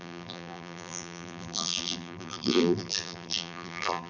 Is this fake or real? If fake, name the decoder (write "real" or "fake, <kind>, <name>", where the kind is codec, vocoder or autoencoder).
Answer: fake, vocoder, BigVGAN v2